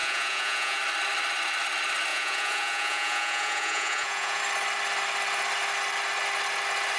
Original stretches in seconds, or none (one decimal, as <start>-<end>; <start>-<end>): 0.8-2.1; 4.4-7.0